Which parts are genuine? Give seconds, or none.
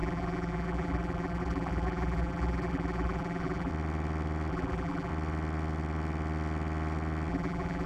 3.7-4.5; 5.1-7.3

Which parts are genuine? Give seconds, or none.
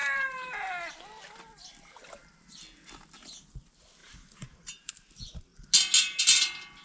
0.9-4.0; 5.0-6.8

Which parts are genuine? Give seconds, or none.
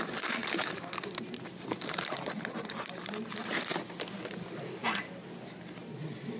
0.0-0.4; 4.2-6.4